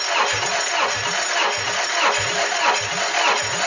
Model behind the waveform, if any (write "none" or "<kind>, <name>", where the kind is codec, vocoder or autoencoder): none